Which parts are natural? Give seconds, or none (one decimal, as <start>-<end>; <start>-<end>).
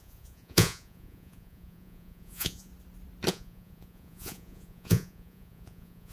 2.7-3.3